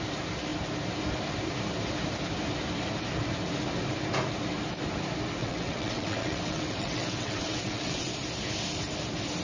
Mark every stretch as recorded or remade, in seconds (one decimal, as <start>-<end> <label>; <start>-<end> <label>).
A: 0.0-5.4 recorded; 5.4-8.1 remade; 8.1-9.4 recorded